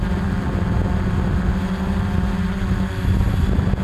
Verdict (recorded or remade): recorded